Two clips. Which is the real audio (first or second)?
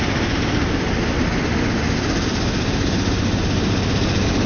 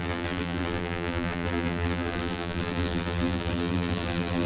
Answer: first